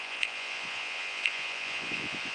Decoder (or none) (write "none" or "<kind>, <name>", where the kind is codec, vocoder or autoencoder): vocoder, Vocos